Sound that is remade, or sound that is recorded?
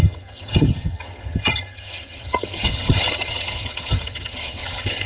remade